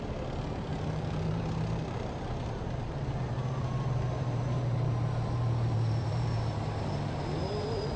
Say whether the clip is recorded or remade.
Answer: remade